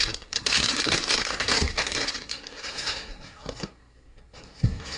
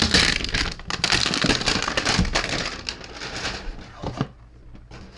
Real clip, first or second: second